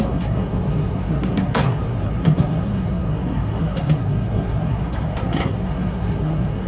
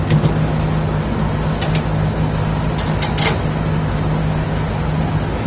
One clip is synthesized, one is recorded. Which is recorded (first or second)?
second